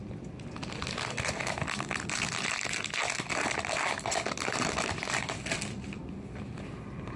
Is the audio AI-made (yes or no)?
no